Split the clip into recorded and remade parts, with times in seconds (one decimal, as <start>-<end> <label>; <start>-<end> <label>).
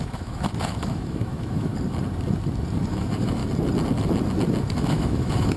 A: 0.0-1.7 remade; 1.7-2.9 recorded; 2.9-3.4 remade; 3.4-4.7 recorded; 4.7-5.6 remade